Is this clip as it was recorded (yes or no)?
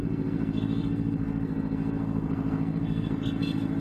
no